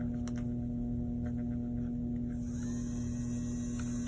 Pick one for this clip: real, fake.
real